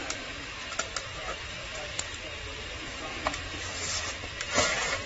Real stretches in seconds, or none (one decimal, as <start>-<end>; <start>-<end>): 0.0-1.6; 3.7-5.1